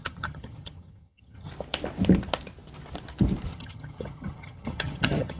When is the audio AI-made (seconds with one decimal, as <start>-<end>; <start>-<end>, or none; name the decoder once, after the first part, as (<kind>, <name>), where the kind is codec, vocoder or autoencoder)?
0.0-1.5 (vocoder, HiFi-GAN); 3.5-5.4